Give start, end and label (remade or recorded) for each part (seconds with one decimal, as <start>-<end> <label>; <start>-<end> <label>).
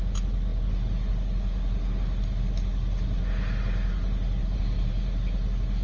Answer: 0.0-4.4 recorded; 4.4-4.9 remade; 4.9-5.8 recorded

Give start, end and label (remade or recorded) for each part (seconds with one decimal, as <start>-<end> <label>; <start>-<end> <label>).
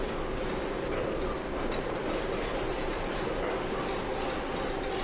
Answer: 0.0-5.0 recorded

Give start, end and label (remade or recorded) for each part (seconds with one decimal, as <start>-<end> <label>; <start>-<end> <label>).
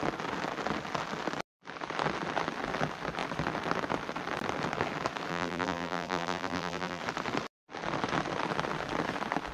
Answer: 0.0-5.3 recorded; 5.3-7.0 remade; 7.0-9.5 recorded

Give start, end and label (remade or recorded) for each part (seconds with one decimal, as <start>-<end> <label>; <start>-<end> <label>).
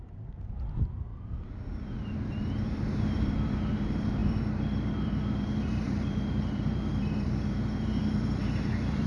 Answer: 0.0-1.1 remade; 1.1-1.8 recorded; 1.8-9.1 remade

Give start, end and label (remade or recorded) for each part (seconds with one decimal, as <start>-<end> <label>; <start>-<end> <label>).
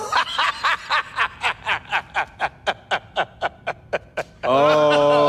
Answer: 0.0-0.5 remade; 0.5-5.3 recorded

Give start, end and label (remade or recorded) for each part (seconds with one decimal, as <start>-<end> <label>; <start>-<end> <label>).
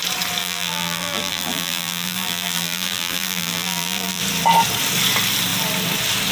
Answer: 0.0-0.4 recorded; 0.4-4.2 remade; 4.2-6.3 recorded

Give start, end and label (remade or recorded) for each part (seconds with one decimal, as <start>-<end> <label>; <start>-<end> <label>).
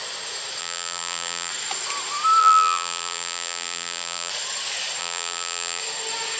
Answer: 0.0-0.6 recorded; 0.6-1.5 remade; 1.5-2.4 recorded; 2.4-4.3 remade; 4.3-5.0 recorded; 5.0-5.8 remade; 5.8-6.4 recorded